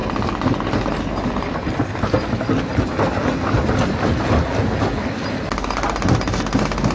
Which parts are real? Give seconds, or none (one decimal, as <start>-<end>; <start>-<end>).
0.0-6.9